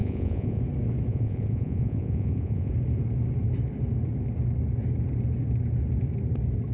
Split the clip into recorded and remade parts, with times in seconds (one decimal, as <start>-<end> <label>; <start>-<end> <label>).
0.0-0.6 remade; 0.6-1.1 recorded; 1.1-2.7 remade; 2.7-6.7 recorded